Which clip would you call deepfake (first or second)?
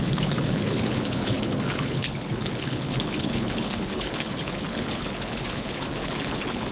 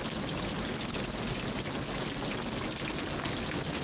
first